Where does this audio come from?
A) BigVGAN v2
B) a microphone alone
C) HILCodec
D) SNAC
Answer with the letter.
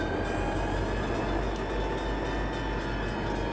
B